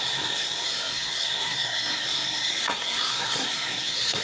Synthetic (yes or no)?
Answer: yes